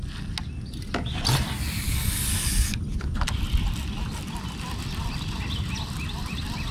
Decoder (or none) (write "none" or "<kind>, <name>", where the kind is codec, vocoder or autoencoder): none